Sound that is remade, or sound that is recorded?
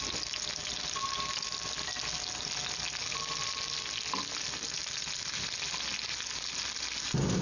recorded